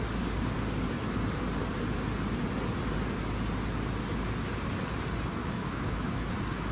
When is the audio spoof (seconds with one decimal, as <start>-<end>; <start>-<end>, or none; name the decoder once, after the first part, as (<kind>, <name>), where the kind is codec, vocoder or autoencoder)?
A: 5.4-6.3 (autoencoder, DAC-VAE)